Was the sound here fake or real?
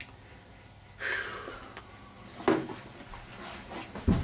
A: real